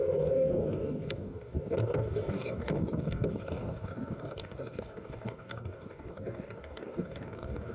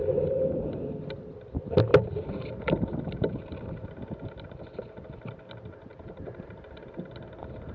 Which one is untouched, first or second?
second